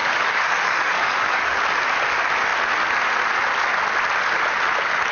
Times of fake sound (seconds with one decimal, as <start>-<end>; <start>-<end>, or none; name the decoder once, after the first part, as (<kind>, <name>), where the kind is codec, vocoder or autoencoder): 0.0-1.6 (codec, DAC)